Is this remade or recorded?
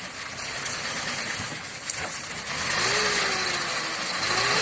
recorded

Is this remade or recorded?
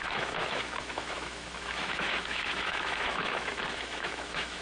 remade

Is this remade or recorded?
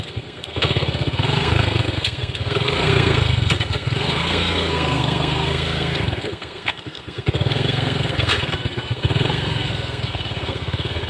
remade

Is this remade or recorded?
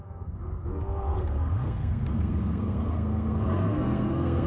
remade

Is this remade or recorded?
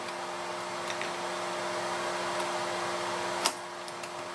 recorded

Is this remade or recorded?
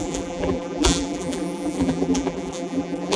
remade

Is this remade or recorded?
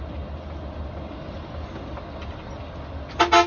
recorded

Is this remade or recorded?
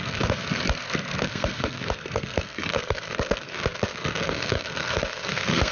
remade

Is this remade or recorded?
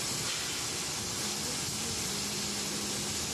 recorded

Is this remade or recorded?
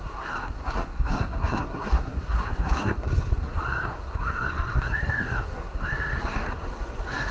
remade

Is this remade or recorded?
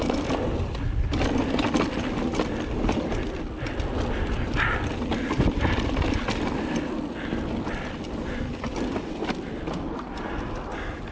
recorded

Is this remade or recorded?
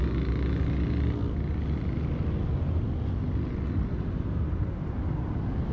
recorded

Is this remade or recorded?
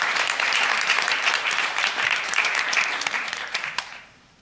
remade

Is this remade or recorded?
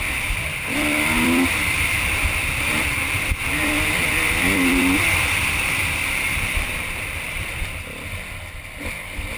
remade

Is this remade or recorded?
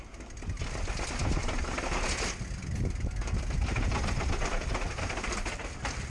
recorded